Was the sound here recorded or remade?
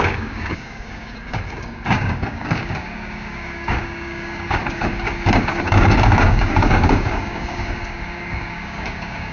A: remade